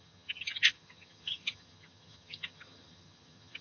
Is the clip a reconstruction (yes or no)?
yes